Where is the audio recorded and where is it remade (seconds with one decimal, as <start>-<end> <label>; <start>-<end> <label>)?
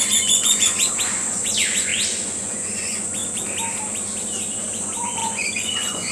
0.0-3.2 remade; 3.2-4.8 recorded; 4.8-6.1 remade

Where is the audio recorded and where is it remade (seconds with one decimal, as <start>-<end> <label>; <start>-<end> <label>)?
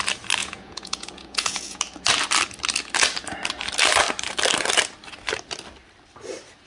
0.0-0.4 recorded; 0.4-1.8 remade; 1.8-6.7 recorded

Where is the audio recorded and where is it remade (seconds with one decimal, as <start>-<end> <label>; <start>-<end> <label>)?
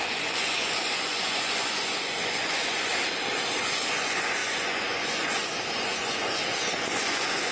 0.0-2.9 remade; 2.9-3.6 recorded; 3.6-7.5 remade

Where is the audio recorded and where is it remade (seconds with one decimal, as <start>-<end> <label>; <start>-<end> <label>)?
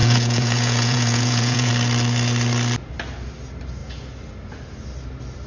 0.0-1.7 remade; 1.7-5.5 recorded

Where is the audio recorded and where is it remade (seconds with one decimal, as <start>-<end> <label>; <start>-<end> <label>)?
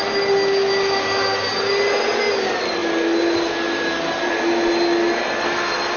0.0-6.0 recorded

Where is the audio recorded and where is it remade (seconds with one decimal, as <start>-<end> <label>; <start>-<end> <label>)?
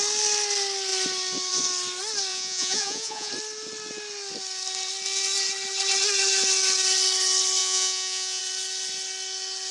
0.0-2.3 recorded; 2.3-3.3 remade; 3.3-7.6 recorded; 7.6-8.4 remade; 8.4-9.7 recorded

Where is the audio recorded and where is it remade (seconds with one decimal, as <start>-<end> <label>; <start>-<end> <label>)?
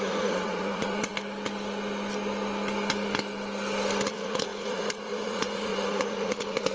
0.0-1.1 remade; 1.1-4.1 recorded; 4.1-6.7 remade